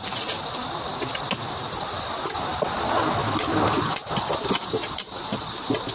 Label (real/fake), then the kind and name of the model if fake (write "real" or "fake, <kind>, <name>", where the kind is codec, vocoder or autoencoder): real